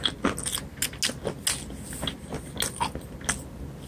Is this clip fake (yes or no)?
no